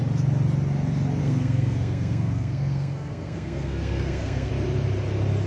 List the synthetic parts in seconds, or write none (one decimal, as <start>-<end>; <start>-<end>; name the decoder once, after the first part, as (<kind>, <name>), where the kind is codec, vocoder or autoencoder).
1.2-4.5 (codec, SNAC)